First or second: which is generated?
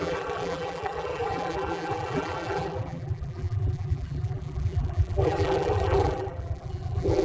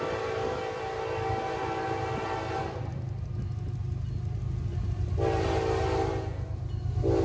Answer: first